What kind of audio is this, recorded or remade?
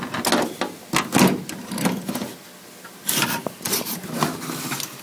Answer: recorded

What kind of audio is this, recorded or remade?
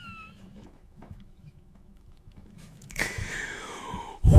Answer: remade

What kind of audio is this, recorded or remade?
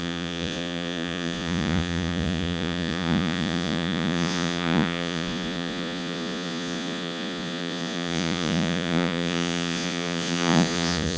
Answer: remade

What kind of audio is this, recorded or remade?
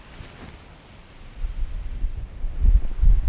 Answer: recorded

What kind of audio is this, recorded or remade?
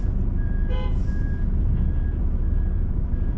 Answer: remade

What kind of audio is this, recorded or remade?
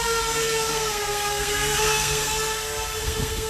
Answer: remade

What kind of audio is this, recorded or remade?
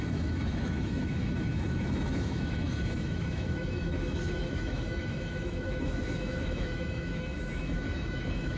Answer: remade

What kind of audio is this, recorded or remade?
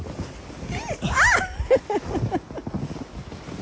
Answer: recorded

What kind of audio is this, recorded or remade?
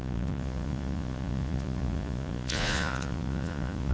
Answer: remade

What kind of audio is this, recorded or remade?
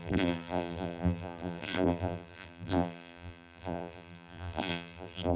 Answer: remade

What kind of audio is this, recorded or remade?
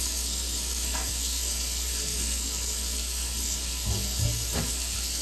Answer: remade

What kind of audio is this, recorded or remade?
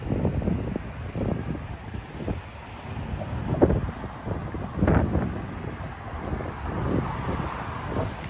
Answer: recorded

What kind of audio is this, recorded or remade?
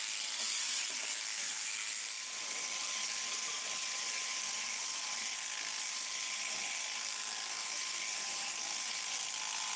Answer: remade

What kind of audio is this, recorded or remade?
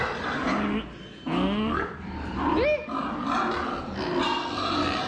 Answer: recorded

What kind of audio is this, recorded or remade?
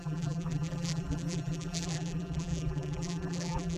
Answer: remade